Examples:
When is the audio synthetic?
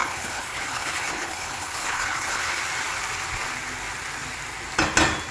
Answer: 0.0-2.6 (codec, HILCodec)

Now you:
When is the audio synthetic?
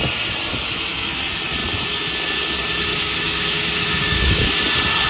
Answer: 0.5-1.1 (autoencoder, DAC-VAE); 2.9-4.5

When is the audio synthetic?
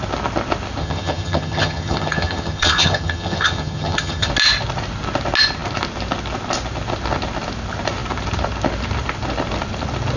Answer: 0.8-4.3 (vocoder, HiFi-GAN)